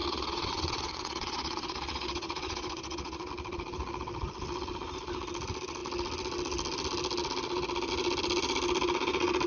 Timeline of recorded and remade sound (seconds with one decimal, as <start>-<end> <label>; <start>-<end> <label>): 0.0-3.3 remade; 3.3-9.5 recorded